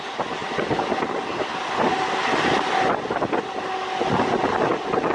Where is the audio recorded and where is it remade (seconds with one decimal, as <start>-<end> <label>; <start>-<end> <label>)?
0.0-5.1 recorded